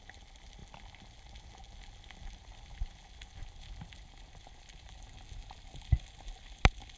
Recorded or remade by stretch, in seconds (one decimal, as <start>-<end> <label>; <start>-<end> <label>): 0.0-7.0 recorded